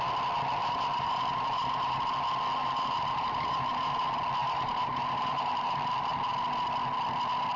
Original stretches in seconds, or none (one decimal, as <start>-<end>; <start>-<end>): 0.0-0.6; 2.1-2.6; 4.0-4.4; 6.2-7.6